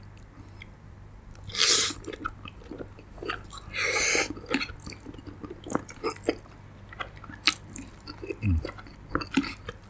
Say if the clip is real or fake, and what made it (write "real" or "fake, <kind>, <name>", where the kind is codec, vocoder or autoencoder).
real